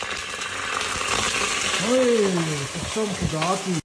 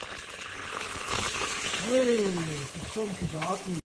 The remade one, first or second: second